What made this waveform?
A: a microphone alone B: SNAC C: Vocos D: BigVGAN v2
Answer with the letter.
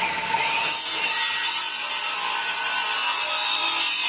A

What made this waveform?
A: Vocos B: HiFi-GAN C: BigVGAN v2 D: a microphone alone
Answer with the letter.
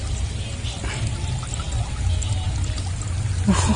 D